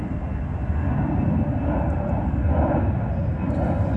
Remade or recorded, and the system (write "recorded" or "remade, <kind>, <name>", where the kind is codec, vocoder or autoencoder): recorded